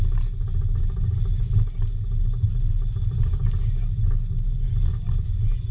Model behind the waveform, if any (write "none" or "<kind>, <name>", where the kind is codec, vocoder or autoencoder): none